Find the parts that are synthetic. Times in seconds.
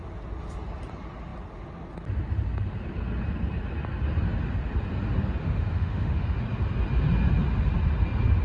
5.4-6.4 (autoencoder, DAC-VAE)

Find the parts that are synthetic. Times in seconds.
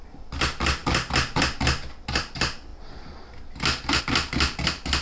none